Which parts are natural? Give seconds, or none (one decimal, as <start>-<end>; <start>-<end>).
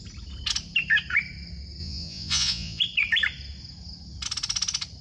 0.0-1.8; 2.8-5.0